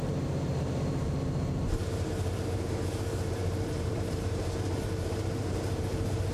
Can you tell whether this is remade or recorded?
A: remade